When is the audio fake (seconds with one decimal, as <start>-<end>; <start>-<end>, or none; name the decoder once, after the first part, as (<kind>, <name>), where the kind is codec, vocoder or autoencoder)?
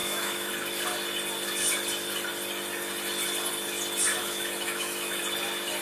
0.0-0.5 (autoencoder, DAC-VAE); 4.2-5.2